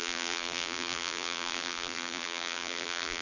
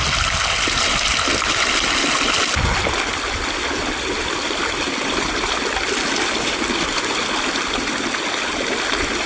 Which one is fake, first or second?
first